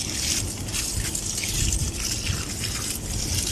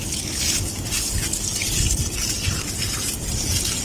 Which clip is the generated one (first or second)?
second